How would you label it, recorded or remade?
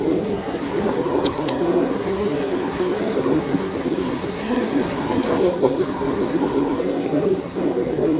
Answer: remade